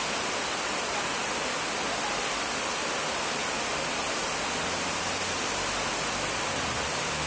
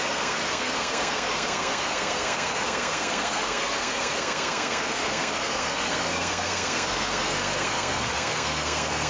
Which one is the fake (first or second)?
second